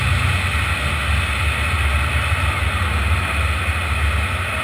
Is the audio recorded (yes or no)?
yes